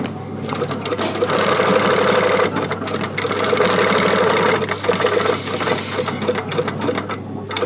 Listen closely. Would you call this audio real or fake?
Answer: real